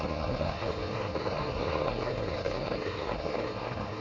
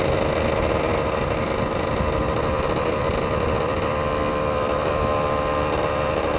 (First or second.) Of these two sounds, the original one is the second